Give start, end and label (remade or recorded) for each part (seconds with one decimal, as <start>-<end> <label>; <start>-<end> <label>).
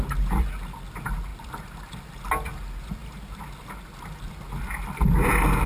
0.0-5.7 recorded